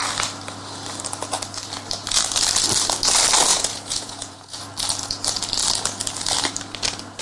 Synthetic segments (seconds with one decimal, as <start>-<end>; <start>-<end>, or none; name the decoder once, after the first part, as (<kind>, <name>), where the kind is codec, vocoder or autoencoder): 3.5-4.6 (vocoder, Vocos)